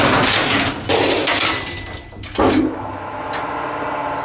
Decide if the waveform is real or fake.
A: real